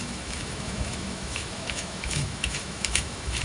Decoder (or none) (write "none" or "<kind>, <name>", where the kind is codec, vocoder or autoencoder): autoencoder, DAC-VAE